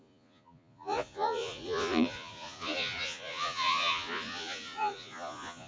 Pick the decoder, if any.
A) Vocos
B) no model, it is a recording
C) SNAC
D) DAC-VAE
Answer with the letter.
A